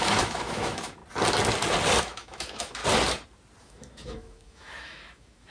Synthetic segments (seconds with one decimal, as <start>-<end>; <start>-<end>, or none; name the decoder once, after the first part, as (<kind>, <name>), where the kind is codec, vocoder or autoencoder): 0.0-1.0 (autoencoder, DAC-VAE); 2.0-2.8; 3.6-5.5